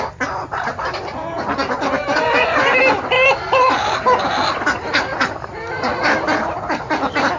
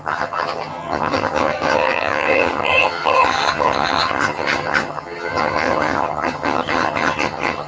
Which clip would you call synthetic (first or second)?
second